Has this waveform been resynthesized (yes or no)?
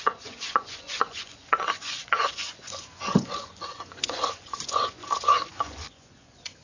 yes